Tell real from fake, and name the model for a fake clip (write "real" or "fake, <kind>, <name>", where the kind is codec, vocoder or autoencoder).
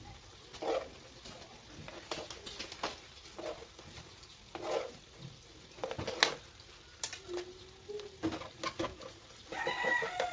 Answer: real